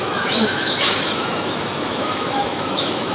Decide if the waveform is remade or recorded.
remade